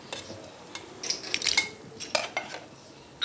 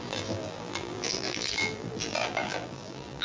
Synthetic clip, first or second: second